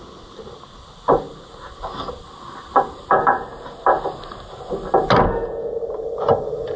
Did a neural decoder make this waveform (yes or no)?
no